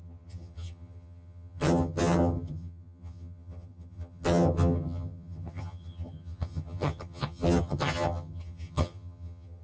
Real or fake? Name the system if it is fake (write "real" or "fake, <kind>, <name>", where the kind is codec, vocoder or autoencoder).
fake, vocoder, HiFi-GAN